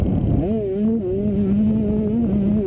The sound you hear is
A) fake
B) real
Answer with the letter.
B